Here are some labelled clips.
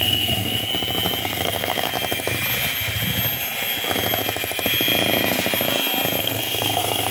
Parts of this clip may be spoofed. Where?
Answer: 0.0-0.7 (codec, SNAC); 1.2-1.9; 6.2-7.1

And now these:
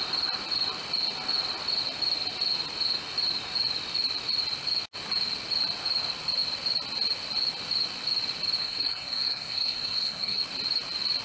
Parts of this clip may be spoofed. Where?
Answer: 8.6-10.4 (codec, SNAC)

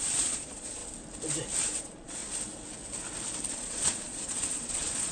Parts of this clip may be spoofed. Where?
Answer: 0.0-0.8 (vocoder, Vocos); 1.8-2.2; 3.5-5.1

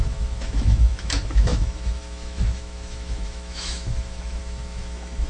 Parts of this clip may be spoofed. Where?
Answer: 0.0-5.3 (autoencoder, DAC-VAE)

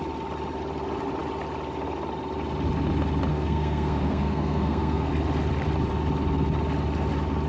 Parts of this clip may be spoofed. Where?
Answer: 3.3-5.1 (codec, SNAC)